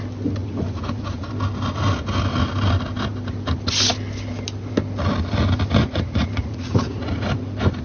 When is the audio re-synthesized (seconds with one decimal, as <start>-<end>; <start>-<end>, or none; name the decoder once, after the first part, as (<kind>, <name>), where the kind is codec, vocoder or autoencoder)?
0.4-1.3 (vocoder, Vocos); 5.8-7.3